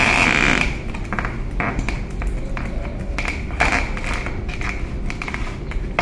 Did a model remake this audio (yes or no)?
no